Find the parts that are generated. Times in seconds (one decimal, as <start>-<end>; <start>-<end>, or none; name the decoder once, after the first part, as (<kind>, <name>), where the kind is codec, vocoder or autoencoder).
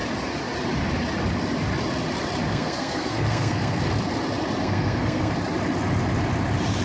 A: 2.5-3.8 (codec, SNAC); 4.6-5.3